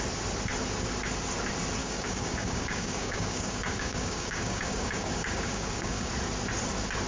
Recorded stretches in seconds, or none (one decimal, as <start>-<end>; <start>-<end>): 0.0-1.8; 6.1-7.1